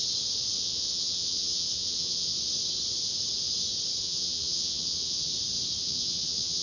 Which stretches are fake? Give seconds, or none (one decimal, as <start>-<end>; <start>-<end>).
0.6-2.3; 4.0-5.3; 5.8-6.6